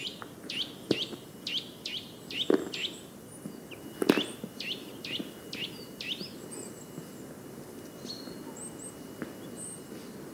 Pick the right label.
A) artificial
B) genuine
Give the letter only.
B